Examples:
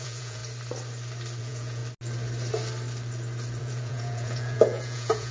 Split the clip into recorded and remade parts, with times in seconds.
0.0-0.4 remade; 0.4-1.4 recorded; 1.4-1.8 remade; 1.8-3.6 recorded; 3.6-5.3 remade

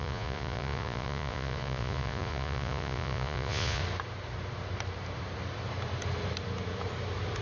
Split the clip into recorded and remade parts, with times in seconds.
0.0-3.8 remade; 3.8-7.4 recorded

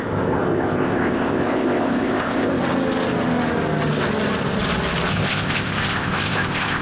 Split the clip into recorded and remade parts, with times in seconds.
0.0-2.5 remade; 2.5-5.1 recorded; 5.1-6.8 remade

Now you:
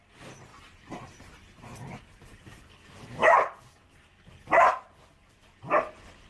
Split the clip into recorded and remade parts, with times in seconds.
0.0-6.3 recorded